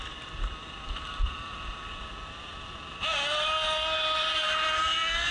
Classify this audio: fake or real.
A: real